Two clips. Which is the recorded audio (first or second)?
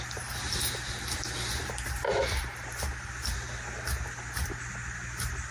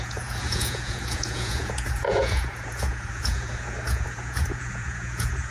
first